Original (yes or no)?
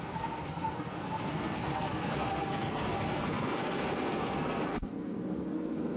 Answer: no